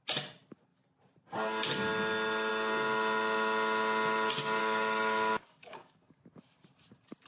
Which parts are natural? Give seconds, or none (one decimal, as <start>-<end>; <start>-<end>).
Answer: 0.0-4.6; 6.1-7.3